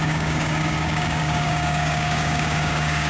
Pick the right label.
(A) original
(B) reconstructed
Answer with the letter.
B